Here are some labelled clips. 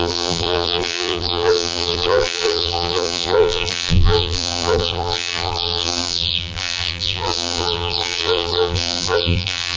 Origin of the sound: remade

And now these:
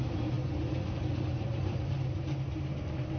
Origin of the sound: remade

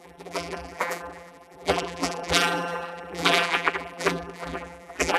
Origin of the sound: remade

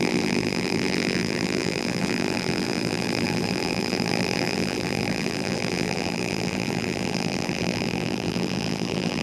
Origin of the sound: remade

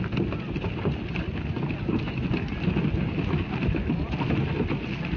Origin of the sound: recorded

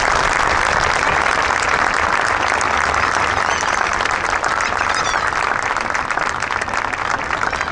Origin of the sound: recorded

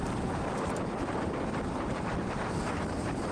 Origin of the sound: recorded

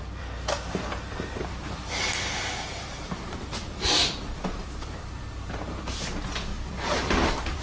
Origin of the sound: remade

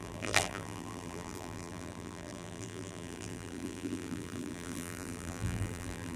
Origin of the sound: remade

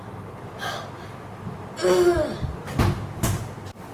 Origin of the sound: recorded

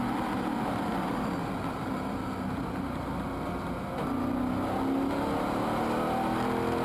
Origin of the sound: recorded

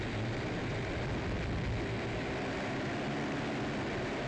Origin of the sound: remade